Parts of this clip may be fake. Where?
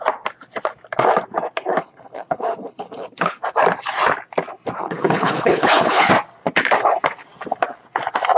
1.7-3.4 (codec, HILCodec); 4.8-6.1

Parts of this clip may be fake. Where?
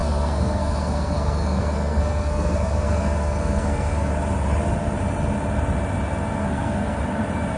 0.0-4.1 (codec, SNAC); 6.4-7.0